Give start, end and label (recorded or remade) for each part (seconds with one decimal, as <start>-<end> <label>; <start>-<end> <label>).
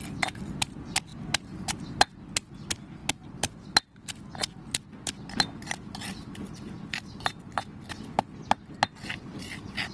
0.0-9.9 recorded